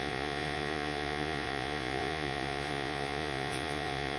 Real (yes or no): no